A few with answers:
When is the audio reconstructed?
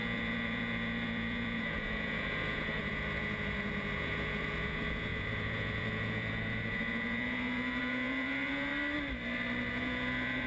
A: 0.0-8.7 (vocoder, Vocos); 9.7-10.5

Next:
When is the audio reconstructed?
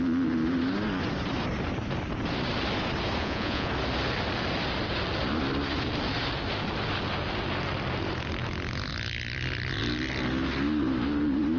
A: 3.2-3.7 (vocoder, Vocos)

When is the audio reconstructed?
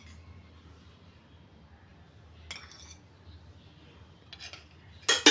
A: none